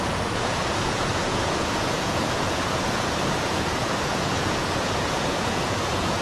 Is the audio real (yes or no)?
no